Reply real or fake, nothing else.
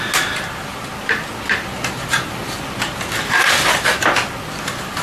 real